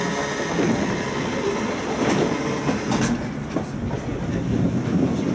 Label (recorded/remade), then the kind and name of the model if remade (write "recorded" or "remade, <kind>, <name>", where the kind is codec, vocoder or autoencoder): recorded